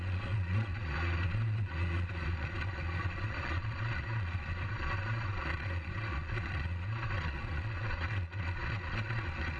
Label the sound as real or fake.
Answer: fake